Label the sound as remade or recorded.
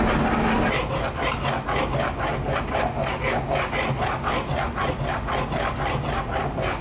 recorded